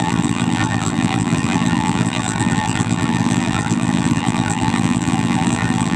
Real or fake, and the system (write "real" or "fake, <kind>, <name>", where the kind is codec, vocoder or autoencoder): fake, vocoder, BigVGAN v2